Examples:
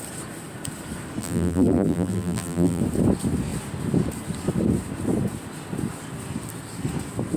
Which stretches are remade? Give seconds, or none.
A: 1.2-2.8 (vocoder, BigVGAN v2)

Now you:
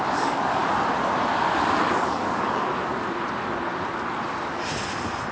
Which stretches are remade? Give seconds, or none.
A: 0.0-0.6 (codec, DAC); 2.0-2.7

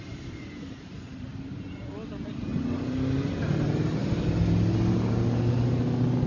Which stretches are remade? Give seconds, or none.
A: 0.0-2.5 (vocoder, BigVGAN v2)

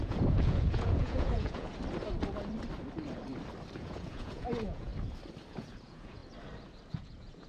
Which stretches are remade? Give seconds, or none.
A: 0.0-1.7 (vocoder, Vocos); 3.8-4.9; 5.5-6.2; 6.9-7.5

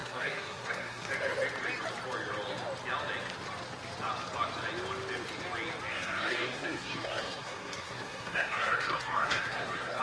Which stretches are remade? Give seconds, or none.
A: 0.0-1.1 (codec, SNAC); 5.9-10.0

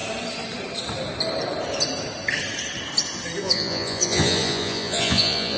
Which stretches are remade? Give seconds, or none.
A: 3.4-5.6 (vocoder, Vocos)

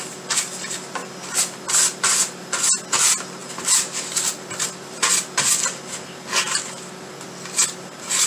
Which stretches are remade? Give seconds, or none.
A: none

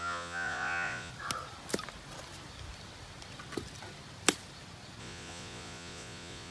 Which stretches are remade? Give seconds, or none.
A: 0.0-1.1 (vocoder, Vocos); 5.0-6.5